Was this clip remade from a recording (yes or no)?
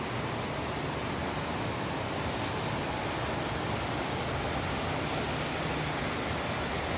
no